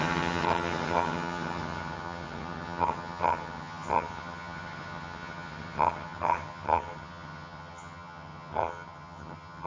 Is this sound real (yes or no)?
no